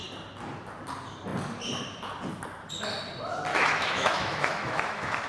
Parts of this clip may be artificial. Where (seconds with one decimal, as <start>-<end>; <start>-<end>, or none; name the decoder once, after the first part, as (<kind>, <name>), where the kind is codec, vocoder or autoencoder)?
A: 3.5-5.3 (autoencoder, DAC-VAE)

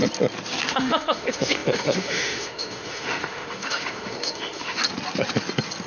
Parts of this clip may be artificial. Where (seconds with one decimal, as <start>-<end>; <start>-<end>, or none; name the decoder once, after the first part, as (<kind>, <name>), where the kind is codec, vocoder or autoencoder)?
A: 0.7-4.8 (autoencoder, DAC-VAE)

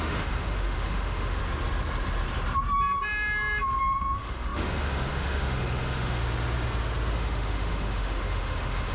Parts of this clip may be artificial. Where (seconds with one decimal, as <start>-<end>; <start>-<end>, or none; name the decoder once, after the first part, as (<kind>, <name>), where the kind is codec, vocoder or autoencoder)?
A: 0.0-1.4 (autoencoder, DAC-VAE); 3.8-6.2; 7.1-8.9